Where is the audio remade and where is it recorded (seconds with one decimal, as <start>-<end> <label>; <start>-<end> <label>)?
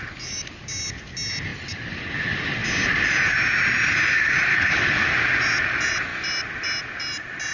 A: 0.0-4.5 recorded; 4.5-5.1 remade; 5.1-7.5 recorded